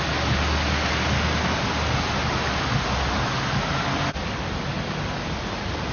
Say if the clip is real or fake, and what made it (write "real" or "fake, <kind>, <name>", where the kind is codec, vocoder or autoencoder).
real